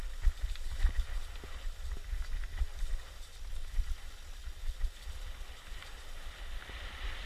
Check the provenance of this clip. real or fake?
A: real